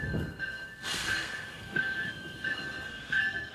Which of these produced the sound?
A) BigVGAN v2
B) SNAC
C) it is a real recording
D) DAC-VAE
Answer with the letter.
B